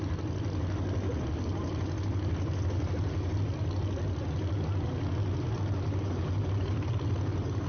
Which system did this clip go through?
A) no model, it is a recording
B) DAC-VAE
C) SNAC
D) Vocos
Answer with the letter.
A